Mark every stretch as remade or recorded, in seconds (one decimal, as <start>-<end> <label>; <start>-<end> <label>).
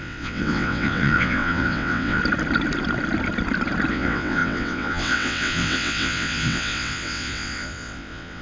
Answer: 0.0-2.2 remade; 2.2-3.9 recorded; 3.9-8.4 remade